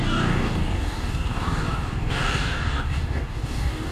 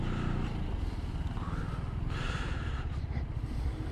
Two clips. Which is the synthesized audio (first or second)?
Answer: first